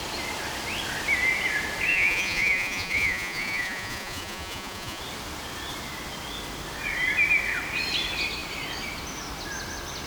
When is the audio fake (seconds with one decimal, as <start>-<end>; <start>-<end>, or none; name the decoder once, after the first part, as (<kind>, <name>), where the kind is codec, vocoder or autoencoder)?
1.9-5.0 (vocoder, Vocos)